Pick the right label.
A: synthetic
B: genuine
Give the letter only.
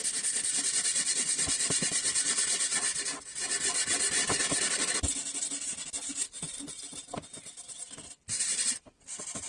B